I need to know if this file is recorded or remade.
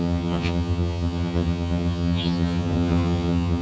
remade